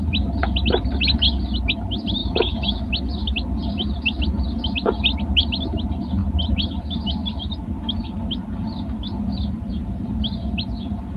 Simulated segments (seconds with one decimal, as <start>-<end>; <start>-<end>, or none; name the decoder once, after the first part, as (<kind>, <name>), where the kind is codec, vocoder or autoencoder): 2.2-2.9 (autoencoder, DAC-VAE)